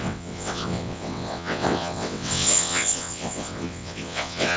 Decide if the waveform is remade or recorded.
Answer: remade